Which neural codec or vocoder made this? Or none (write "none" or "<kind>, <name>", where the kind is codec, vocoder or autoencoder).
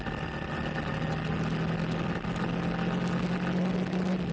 none